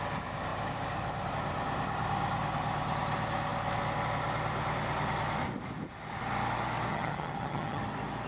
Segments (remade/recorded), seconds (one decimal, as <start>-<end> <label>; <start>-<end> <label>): 0.0-6.9 recorded; 6.9-7.8 remade; 7.8-8.3 recorded